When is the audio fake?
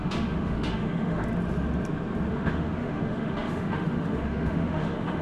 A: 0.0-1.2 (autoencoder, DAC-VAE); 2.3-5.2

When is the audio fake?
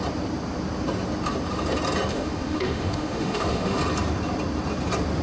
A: 2.1-3.8 (autoencoder, DAC-VAE)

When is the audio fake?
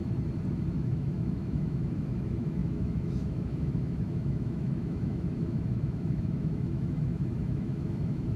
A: 0.7-8.4 (autoencoder, DAC-VAE)